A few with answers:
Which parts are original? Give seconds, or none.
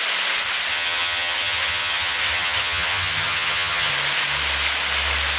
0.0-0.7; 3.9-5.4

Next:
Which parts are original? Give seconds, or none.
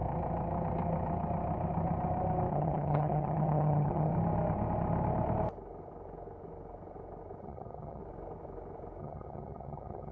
0.0-2.5; 4.1-7.4; 8.0-9.0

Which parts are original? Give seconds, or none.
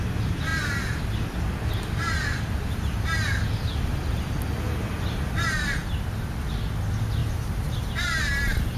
0.0-8.8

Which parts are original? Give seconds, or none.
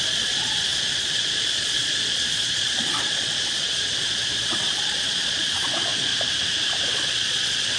6.1-6.9